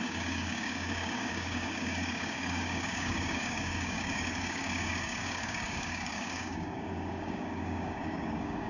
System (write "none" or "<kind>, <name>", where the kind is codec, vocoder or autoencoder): codec, DAC